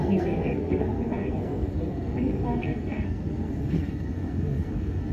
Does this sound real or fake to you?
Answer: fake